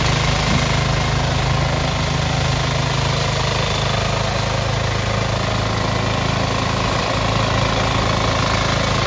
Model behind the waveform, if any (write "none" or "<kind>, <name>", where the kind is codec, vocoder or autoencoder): none